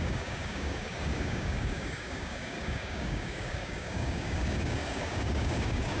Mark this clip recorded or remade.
remade